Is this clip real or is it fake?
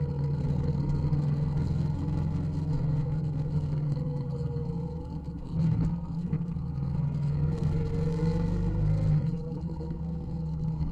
fake